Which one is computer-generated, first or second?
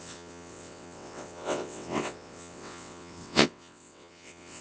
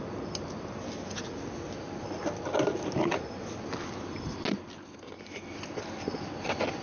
first